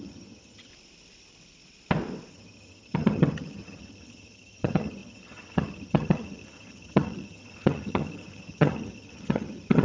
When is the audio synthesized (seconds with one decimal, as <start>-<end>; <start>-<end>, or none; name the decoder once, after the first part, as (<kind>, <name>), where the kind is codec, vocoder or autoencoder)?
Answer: 0.0-0.7 (vocoder, HiFi-GAN); 2.3-9.8